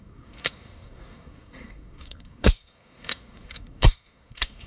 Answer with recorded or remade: remade